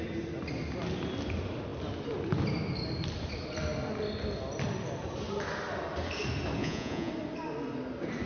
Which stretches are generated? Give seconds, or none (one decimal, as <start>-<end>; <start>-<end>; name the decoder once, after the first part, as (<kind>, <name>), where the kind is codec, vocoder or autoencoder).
6.6-7.1 (vocoder, Vocos)